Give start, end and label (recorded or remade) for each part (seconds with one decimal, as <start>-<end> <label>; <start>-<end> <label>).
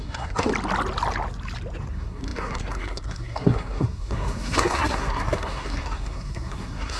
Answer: 0.0-0.5 remade; 0.5-1.9 recorded; 1.9-7.0 remade